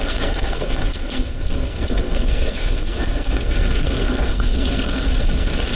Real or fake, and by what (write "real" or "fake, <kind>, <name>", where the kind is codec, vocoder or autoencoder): fake, codec, SNAC